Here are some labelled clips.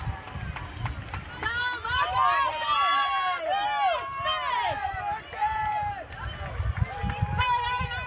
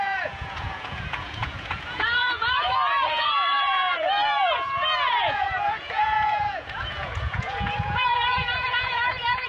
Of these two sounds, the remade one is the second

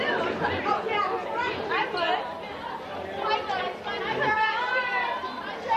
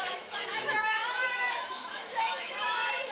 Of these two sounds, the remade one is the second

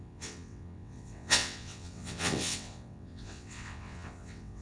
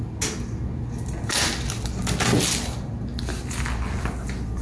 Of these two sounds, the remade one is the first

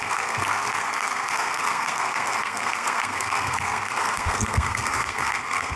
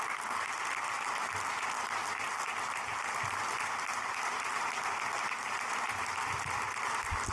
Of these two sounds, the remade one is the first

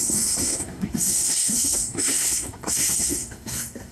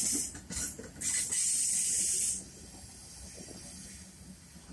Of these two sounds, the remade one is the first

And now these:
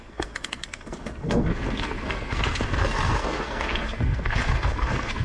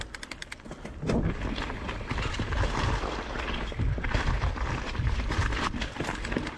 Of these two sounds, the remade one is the first